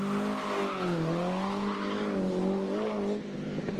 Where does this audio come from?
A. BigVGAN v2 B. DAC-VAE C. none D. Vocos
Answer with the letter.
C